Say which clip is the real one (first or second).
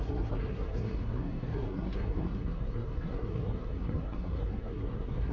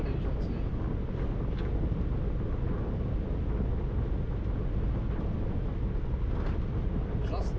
second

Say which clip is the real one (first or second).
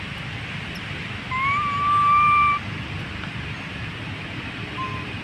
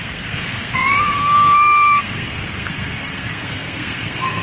first